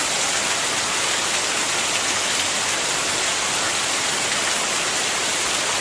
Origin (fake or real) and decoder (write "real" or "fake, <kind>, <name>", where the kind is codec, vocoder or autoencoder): real